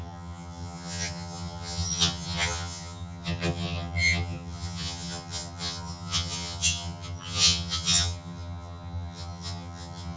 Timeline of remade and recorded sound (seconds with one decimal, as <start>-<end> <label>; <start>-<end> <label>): 0.0-10.2 remade